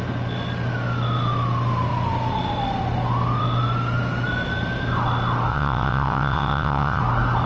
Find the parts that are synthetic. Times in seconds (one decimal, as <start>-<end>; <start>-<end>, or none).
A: 5.5-7.0